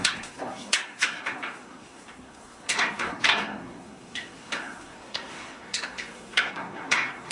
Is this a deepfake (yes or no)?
yes